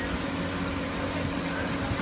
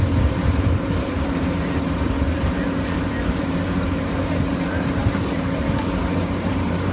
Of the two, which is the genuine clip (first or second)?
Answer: first